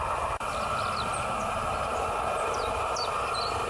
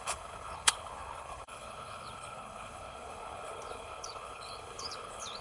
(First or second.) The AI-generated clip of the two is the second